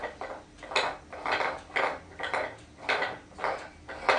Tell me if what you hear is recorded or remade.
recorded